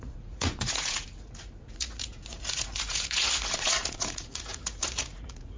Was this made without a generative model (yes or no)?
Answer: no